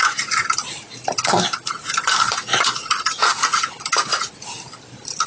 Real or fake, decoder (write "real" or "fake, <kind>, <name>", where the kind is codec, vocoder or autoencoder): real